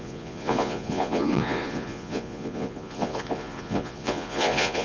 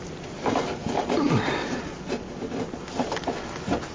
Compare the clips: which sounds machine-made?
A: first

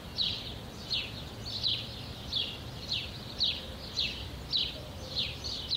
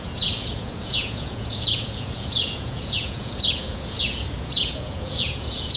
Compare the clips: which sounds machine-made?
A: second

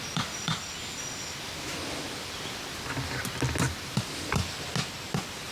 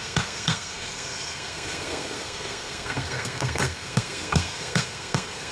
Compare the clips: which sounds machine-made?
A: second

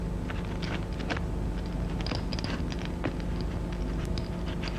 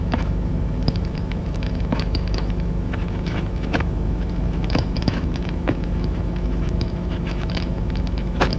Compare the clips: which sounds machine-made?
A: second